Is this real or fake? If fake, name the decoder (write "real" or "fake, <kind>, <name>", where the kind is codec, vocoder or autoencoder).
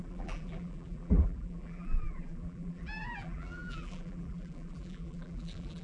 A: fake, vocoder, BigVGAN v2